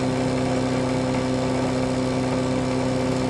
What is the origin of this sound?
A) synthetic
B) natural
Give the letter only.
B